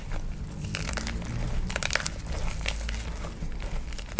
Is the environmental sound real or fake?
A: real